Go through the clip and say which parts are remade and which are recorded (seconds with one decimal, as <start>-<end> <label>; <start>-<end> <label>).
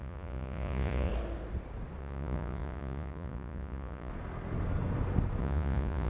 0.0-1.1 remade; 1.1-2.0 recorded; 2.0-4.1 remade; 4.1-5.4 recorded; 5.4-6.1 remade